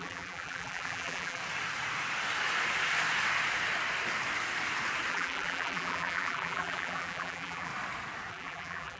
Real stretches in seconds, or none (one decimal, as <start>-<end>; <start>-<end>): 1.4-5.1; 7.7-8.3